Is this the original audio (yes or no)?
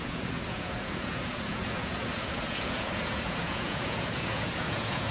no